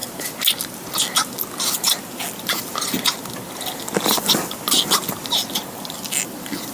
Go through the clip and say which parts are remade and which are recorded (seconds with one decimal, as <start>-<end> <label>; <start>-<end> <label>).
0.0-6.7 recorded

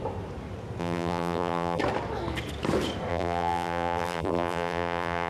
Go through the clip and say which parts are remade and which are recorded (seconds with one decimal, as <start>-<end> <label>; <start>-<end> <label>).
0.0-0.8 recorded; 0.8-1.8 remade; 1.8-3.1 recorded; 3.1-5.3 remade

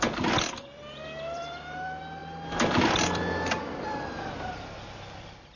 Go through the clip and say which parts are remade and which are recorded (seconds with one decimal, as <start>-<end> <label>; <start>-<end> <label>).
0.0-5.6 remade

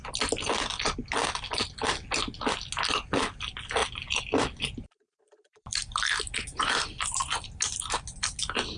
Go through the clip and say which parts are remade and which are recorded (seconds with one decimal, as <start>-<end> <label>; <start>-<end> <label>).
0.0-3.8 recorded; 3.8-6.3 remade; 6.3-8.8 recorded

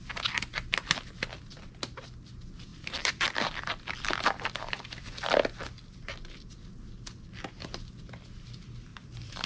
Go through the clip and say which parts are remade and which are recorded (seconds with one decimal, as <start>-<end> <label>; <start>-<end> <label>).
0.0-2.7 recorded; 2.7-6.7 remade; 6.7-8.9 recorded; 8.9-9.5 remade

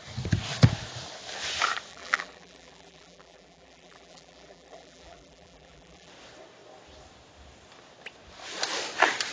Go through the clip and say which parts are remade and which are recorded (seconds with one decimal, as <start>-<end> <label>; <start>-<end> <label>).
0.0-1.9 recorded; 1.9-6.1 remade; 6.1-9.3 recorded

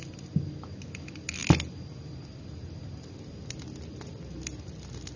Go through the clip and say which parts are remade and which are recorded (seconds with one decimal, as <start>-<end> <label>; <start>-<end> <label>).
0.0-5.2 recorded

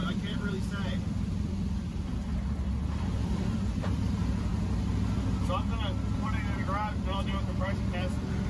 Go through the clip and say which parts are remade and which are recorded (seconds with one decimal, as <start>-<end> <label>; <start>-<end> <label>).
0.0-4.5 remade; 4.5-6.1 recorded; 6.1-8.5 remade